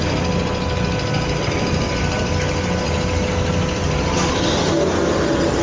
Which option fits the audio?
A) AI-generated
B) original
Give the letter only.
B